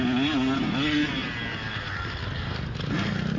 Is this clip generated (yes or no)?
no